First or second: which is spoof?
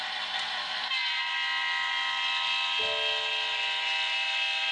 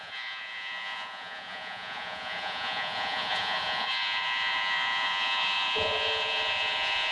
second